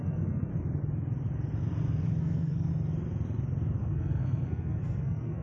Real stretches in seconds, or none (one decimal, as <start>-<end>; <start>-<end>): 0.5-2.2; 2.7-3.8